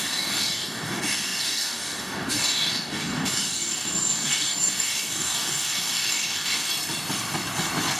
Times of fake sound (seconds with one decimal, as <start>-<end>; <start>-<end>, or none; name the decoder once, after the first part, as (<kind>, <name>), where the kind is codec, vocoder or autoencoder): 0.0-6.7 (codec, DAC)